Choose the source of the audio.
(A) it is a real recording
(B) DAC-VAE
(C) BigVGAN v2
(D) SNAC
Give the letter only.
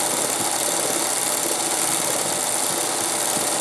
A